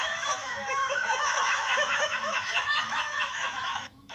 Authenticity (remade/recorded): remade